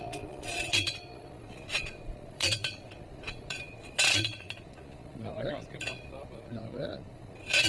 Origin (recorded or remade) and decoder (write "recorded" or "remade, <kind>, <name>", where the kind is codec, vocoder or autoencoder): remade, vocoder, Vocos